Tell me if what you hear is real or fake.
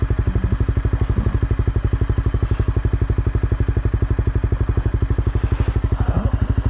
real